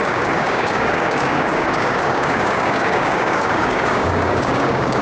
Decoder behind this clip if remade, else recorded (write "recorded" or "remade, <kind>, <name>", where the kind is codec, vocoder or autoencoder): remade, codec, DAC